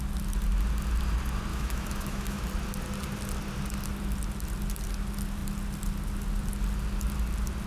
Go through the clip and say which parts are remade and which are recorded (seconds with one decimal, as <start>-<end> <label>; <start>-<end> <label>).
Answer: 0.0-1.5 recorded; 1.5-2.4 remade; 2.4-7.7 recorded